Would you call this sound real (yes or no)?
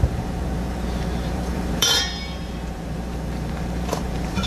no